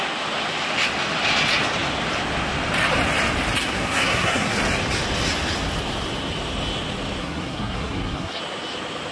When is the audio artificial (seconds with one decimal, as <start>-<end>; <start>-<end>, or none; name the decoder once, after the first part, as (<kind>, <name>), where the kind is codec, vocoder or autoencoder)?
3.6-4.6 (codec, SNAC); 7.2-8.4